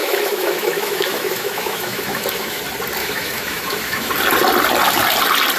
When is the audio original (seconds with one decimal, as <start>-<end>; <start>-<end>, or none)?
2.6-3.0; 4.1-5.6